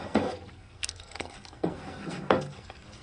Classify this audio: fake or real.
fake